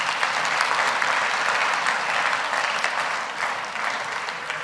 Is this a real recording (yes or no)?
no